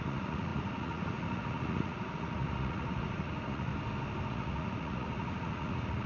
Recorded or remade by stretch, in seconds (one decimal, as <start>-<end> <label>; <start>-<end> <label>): 0.0-3.7 remade; 3.7-4.3 recorded; 4.3-6.1 remade